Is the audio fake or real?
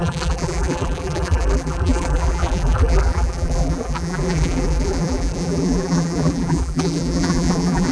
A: fake